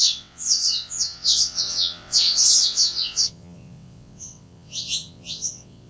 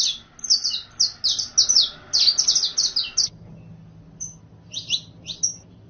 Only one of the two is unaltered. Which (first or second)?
second